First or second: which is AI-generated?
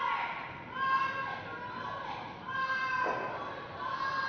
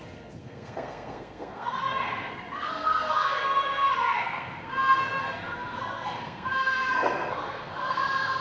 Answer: second